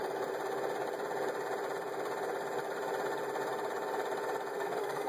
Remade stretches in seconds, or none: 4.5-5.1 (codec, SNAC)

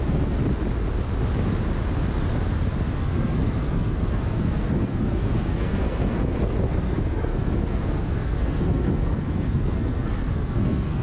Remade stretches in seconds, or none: 0.0-0.4 (codec, SNAC); 3.0-11.0

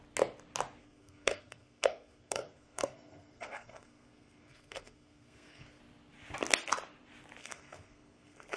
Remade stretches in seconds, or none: 0.8-5.8 (codec, SNAC); 7.4-8.6

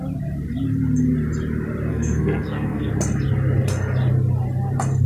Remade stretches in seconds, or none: 1.9-2.9 (codec, SNAC)